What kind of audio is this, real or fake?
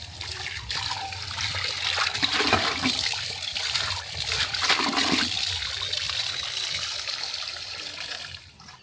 fake